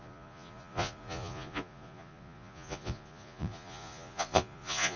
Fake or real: fake